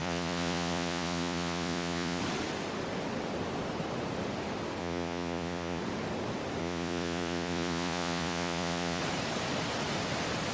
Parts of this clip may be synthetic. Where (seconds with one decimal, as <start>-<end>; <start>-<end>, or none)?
0.0-2.2; 4.8-5.8; 6.6-9.0